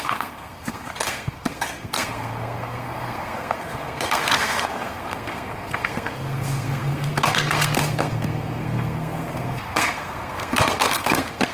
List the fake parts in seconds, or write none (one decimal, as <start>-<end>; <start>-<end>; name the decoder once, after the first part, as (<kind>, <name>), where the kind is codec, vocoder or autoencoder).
0.0-11.5 (codec, SNAC)